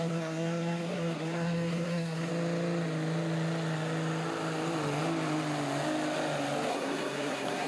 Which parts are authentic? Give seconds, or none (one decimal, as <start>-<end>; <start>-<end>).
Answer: 2.3-6.7